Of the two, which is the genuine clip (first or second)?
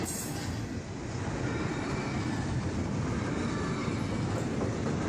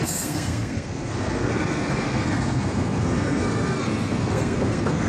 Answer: first